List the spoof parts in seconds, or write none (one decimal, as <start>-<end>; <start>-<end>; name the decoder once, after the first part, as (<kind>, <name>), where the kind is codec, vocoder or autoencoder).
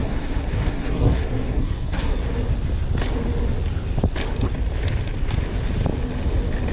0.0-2.2 (codec, SNAC)